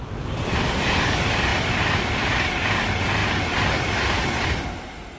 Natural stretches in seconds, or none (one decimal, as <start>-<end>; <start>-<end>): 0.0-5.2